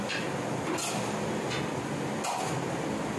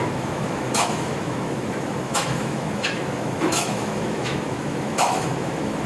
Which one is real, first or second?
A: first